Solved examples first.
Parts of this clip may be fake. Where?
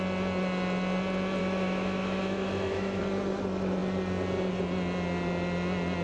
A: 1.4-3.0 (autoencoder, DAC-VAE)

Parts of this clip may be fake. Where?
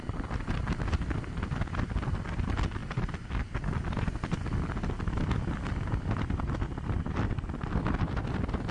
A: none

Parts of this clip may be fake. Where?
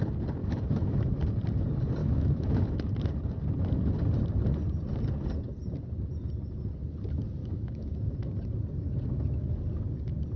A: 0.4-1.2 (autoencoder, DAC-VAE); 2.0-2.9; 7.4-7.9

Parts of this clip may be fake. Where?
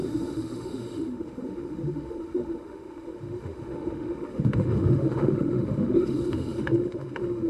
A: 0.0-7.5 (autoencoder, DAC-VAE)